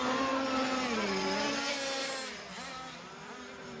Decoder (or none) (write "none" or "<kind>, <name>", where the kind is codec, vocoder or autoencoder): none